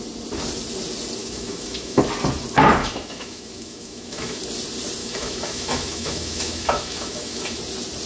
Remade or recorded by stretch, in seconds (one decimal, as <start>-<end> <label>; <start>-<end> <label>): 0.0-1.2 recorded; 1.2-2.0 remade; 2.0-2.8 recorded; 2.8-4.4 remade; 4.4-5.0 recorded; 5.0-7.6 remade; 7.6-8.1 recorded